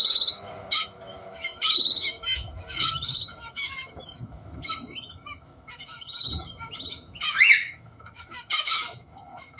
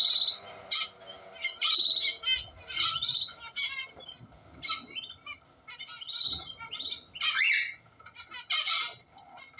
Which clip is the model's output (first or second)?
first